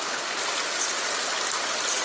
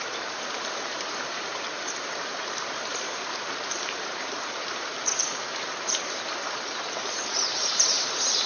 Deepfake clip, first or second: second